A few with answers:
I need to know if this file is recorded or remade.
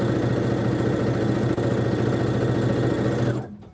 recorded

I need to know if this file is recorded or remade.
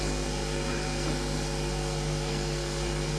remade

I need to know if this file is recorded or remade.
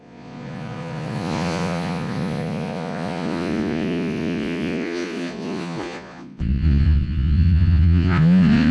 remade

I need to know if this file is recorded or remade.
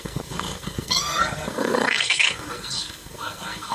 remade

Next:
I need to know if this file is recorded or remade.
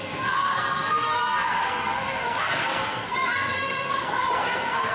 remade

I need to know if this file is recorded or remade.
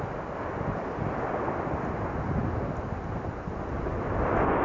recorded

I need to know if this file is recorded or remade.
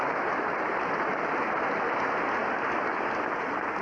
recorded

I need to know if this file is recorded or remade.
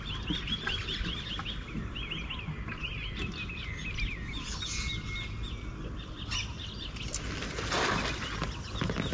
recorded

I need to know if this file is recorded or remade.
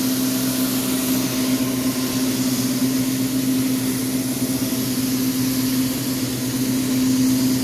recorded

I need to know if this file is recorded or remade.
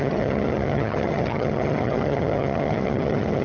remade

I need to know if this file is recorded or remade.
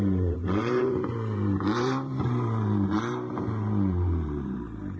remade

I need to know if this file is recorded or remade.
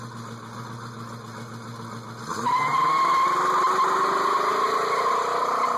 recorded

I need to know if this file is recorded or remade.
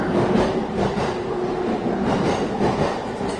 recorded